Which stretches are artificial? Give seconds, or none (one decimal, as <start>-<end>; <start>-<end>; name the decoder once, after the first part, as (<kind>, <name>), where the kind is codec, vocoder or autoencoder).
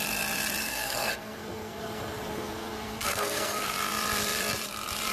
0.6-3.7 (codec, SNAC)